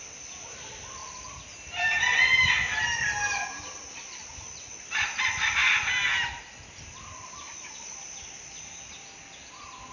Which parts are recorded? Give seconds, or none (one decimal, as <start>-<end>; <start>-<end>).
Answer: 0.0-9.9